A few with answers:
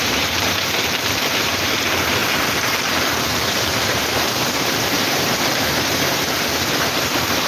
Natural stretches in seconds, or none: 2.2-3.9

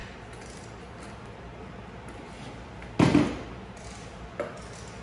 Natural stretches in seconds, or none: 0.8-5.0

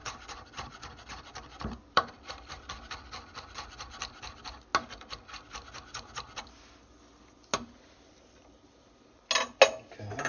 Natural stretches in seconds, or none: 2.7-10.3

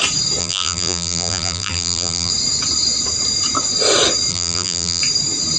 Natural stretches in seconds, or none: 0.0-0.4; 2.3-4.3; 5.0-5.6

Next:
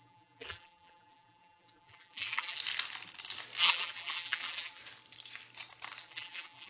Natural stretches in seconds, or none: 2.6-3.6; 4.8-6.0